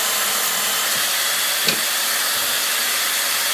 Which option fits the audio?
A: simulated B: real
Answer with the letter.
B